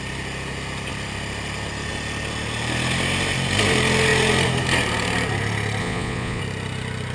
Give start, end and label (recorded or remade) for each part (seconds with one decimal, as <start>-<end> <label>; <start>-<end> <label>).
0.0-5.8 recorded; 5.8-6.4 remade; 6.4-7.1 recorded